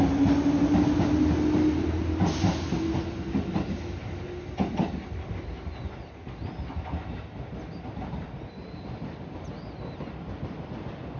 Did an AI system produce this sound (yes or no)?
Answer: no